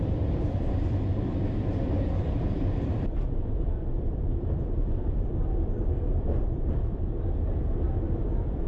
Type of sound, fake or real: fake